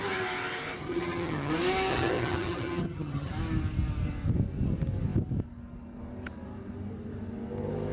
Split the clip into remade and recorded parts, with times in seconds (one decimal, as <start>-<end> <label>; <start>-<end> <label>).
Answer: 0.0-0.8 recorded; 0.8-1.5 remade; 1.5-1.9 recorded; 1.9-3.3 remade; 3.3-7.9 recorded